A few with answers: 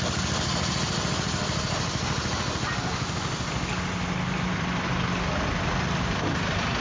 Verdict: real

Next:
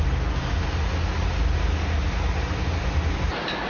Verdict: real